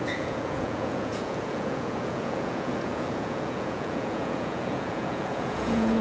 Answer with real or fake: fake